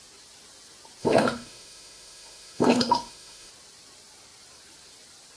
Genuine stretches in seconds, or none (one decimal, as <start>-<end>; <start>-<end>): 0.0-1.0; 3.5-5.4